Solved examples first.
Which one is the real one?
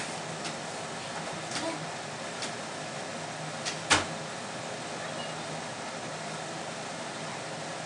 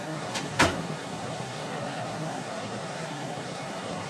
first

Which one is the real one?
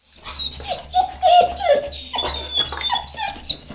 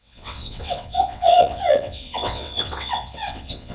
first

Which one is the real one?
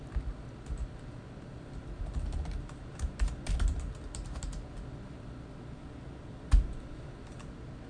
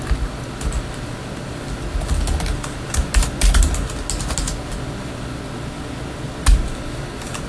second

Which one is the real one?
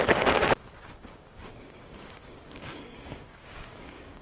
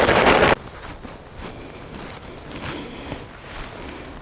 second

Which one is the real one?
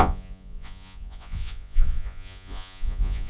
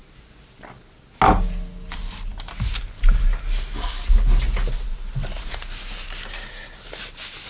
second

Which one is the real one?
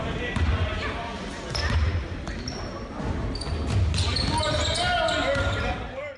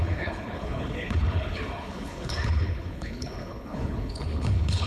first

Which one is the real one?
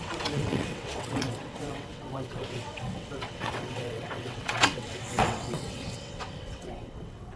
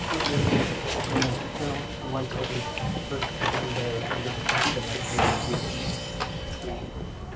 second